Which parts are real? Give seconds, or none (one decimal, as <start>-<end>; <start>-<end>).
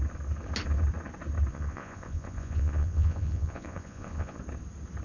0.0-1.5; 4.4-5.0